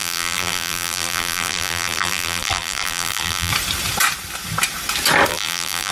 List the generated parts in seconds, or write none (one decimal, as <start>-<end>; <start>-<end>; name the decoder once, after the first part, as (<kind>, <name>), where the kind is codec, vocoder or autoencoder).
0.0-3.5 (vocoder, BigVGAN v2); 5.3-5.9